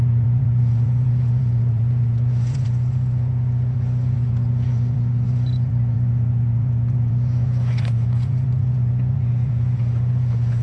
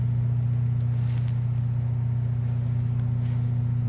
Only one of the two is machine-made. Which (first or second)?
first